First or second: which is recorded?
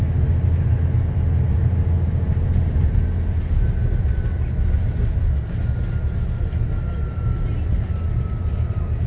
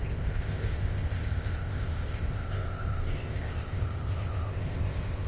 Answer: first